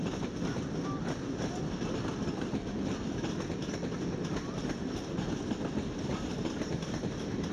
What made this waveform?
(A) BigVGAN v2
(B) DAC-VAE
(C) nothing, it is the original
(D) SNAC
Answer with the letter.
C